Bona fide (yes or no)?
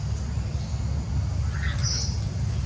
yes